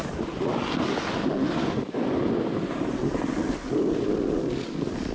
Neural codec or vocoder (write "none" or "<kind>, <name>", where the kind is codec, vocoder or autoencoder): none